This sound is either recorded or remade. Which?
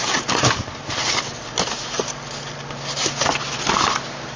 recorded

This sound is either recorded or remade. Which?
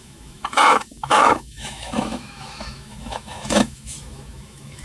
remade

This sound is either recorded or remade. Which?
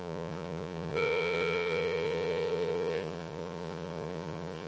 remade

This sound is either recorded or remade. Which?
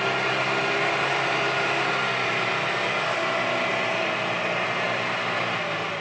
recorded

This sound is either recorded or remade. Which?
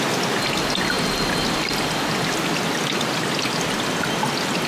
recorded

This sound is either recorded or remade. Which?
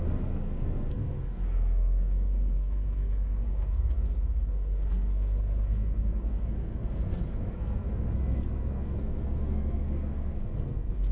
remade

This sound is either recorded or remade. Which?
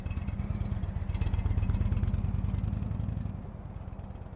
recorded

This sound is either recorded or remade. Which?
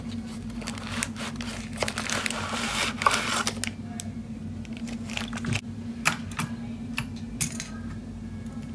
recorded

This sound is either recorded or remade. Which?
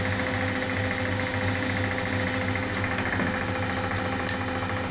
recorded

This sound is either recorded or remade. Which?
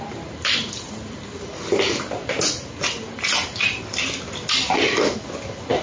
recorded